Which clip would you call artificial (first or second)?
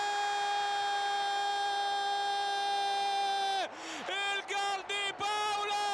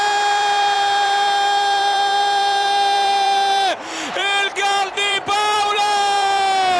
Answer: second